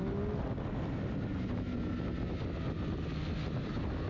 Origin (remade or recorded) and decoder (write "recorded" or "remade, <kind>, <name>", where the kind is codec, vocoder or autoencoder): recorded